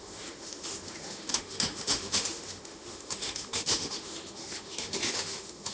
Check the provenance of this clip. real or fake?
fake